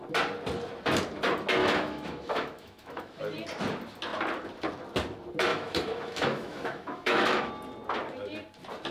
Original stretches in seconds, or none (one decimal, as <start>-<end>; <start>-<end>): 0.0-1.6; 3.2-5.5; 7.5-8.9